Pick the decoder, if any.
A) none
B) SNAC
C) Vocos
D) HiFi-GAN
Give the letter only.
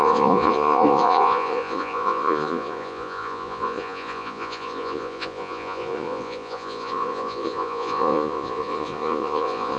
C